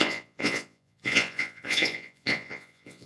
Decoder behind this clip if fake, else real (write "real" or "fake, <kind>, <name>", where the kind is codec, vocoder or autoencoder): fake, vocoder, Vocos